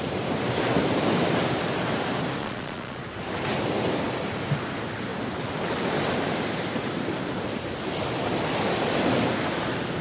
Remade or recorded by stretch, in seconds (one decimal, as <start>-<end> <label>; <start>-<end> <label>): 0.0-2.4 recorded; 2.4-3.0 remade; 3.0-10.0 recorded